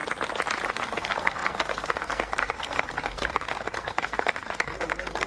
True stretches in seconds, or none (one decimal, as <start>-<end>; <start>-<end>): 0.0-0.7